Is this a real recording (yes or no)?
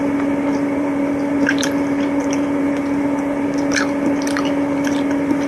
no